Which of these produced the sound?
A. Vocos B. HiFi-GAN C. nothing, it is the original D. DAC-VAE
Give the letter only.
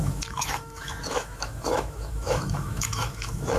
D